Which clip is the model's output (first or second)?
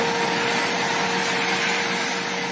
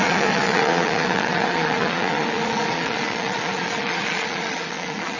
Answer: second